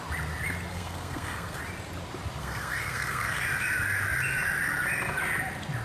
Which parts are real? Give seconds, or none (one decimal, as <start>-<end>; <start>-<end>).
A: 0.0-0.7; 1.6-2.4; 3.4-5.8